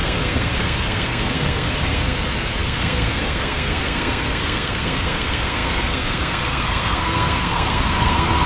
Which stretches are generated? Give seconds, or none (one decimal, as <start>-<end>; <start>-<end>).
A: 0.0-8.5